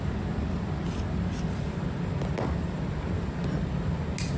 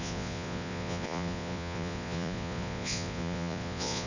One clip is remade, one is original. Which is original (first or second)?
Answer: first